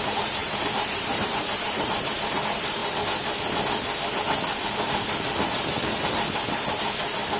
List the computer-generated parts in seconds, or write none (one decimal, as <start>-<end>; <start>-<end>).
0.0-2.8